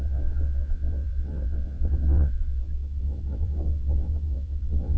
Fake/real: fake